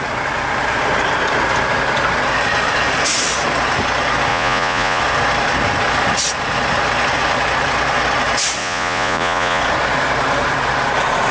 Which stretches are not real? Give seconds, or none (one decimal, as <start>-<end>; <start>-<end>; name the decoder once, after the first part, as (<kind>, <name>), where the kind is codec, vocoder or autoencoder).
4.3-5.0 (vocoder, Vocos); 8.6-9.6